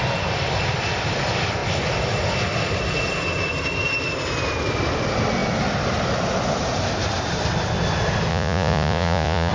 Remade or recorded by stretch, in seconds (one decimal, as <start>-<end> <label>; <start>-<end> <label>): 0.0-8.3 recorded; 8.3-9.5 remade